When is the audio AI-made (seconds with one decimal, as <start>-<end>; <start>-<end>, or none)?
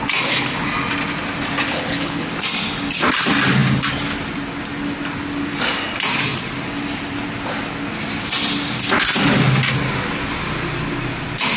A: 1.7-2.3